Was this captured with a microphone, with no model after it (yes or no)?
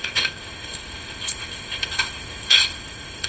no